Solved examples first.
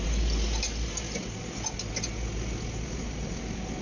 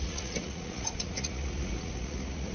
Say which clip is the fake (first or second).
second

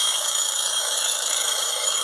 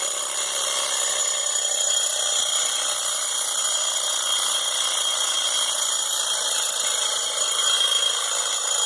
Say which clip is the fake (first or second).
first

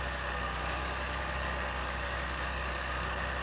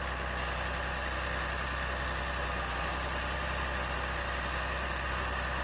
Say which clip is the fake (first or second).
first